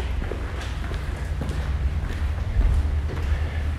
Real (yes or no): yes